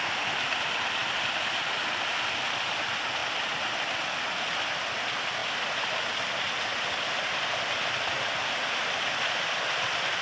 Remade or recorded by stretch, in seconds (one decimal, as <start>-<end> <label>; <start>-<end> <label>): 0.0-10.2 recorded